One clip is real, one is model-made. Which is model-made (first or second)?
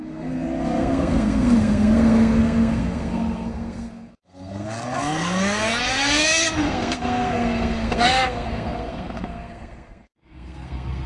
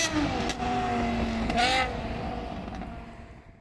first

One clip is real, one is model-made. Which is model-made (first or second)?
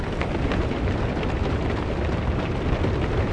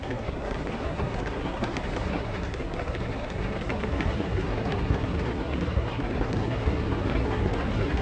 second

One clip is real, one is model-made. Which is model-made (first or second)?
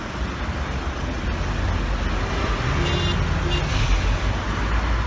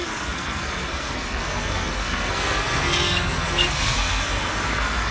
second